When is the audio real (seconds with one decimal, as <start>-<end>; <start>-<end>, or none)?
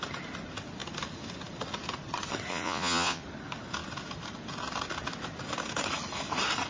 0.0-2.5; 3.2-6.7